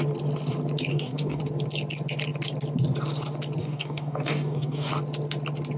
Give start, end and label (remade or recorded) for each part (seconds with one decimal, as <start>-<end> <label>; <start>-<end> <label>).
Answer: 0.0-0.9 recorded; 0.9-1.4 remade; 1.4-3.6 recorded; 3.6-4.9 remade; 4.9-5.8 recorded